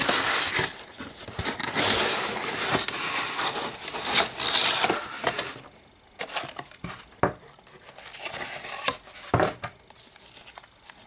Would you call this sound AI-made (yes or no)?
no